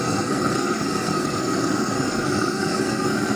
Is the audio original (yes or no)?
no